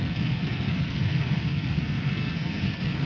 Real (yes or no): no